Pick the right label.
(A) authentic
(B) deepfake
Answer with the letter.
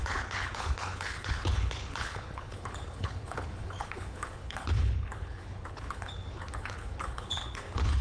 B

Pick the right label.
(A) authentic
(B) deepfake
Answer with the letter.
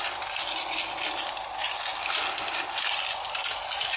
A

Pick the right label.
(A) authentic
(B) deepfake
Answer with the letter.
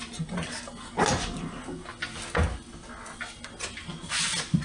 A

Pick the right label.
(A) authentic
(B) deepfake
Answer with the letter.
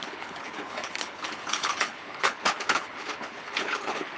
B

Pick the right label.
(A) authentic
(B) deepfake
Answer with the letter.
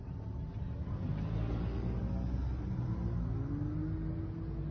A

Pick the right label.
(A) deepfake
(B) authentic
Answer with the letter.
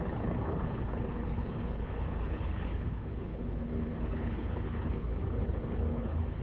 A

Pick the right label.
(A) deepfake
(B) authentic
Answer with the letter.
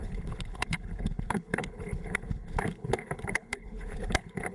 A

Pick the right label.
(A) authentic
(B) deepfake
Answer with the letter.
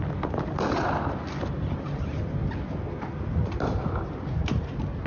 A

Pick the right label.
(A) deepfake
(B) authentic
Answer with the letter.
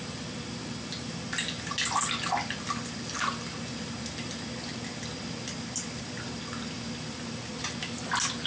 B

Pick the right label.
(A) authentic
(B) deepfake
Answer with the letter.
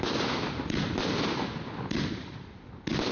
A